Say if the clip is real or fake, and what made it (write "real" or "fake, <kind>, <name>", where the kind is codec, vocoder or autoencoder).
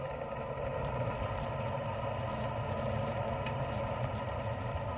real